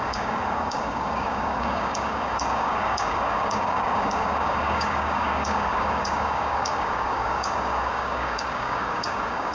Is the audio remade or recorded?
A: remade